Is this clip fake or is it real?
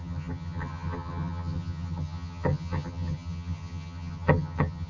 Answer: fake